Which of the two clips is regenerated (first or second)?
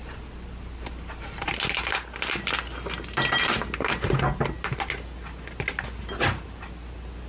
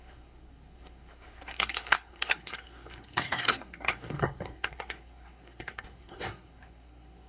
second